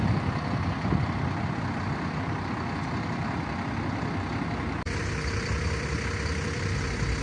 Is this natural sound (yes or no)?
yes